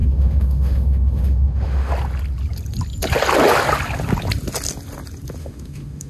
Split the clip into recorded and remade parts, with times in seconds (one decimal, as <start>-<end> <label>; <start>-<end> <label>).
0.0-1.9 remade; 1.9-5.4 recorded; 5.4-6.1 remade